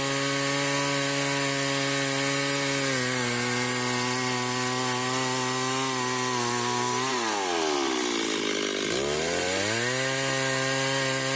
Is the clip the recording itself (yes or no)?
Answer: yes